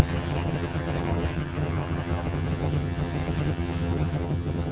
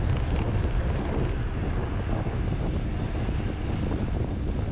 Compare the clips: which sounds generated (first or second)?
first